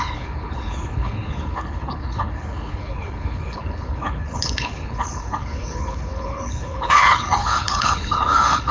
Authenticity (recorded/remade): remade